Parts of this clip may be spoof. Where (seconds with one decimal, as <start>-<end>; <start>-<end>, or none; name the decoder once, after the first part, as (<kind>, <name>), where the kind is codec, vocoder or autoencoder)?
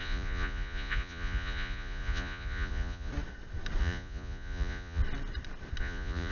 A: 0.0-3.1 (vocoder, Vocos); 3.8-5.0; 5.8-6.3